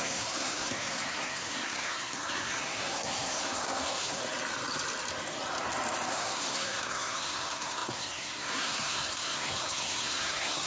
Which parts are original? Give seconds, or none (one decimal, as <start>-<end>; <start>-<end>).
4.2-6.1